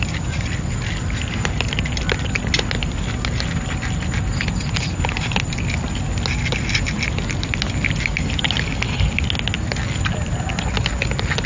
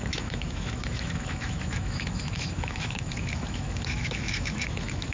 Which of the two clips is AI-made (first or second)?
second